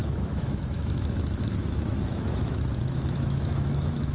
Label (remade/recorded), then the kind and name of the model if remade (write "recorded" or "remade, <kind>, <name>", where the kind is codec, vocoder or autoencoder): remade, autoencoder, DAC-VAE